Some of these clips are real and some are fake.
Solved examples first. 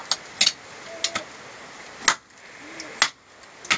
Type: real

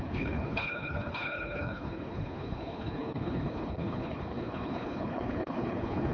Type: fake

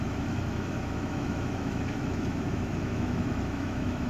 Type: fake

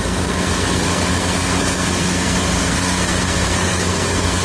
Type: fake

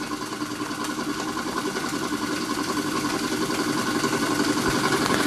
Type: real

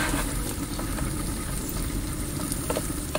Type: real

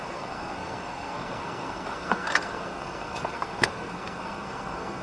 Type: fake